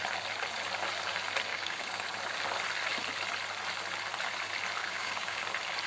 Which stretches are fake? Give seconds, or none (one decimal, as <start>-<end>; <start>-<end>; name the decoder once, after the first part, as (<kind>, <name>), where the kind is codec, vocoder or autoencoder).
1.5-2.0 (codec, DAC); 4.8-5.4